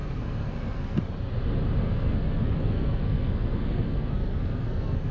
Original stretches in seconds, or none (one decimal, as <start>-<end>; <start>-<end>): 1.0-1.8

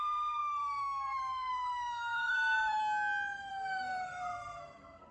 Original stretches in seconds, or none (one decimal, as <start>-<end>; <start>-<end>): 2.8-3.5